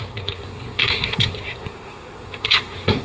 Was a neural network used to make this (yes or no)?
yes